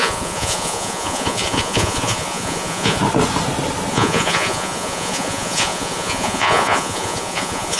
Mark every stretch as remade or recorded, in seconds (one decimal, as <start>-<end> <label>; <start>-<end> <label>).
0.0-3.0 remade; 3.0-3.9 recorded; 3.9-7.8 remade

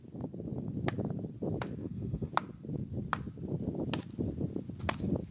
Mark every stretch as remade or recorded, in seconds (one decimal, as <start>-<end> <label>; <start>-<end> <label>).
0.0-1.8 recorded; 1.8-2.3 remade; 2.3-5.3 recorded

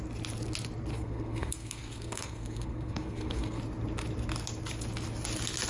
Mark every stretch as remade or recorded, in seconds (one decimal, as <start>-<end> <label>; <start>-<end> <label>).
0.0-0.9 recorded; 0.9-3.6 remade; 3.6-5.7 recorded

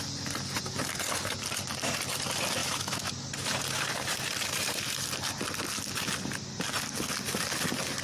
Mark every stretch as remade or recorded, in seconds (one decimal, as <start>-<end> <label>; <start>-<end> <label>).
0.0-2.6 recorded; 2.6-3.1 remade; 3.1-8.0 recorded